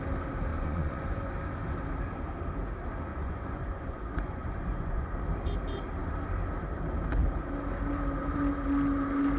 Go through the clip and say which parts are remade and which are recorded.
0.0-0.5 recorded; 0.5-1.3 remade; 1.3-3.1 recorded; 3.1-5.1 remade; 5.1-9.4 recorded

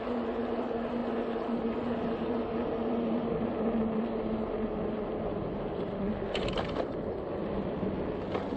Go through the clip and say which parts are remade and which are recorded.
0.0-8.6 recorded

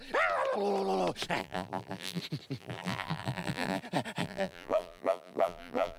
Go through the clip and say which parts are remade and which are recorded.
0.0-1.4 recorded; 1.4-2.2 remade; 2.2-2.6 recorded; 2.6-3.8 remade; 3.8-4.2 recorded; 4.2-6.0 remade

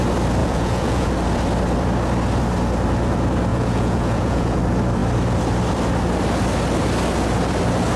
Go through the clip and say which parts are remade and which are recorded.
0.0-0.4 recorded; 0.4-1.1 remade; 1.1-3.5 recorded; 3.5-4.6 remade; 4.6-8.0 recorded

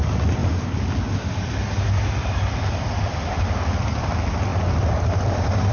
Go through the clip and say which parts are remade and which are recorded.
0.0-5.7 recorded

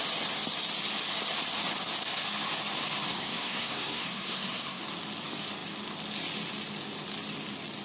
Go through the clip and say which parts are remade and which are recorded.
0.0-3.1 recorded; 3.1-4.8 remade; 4.8-7.8 recorded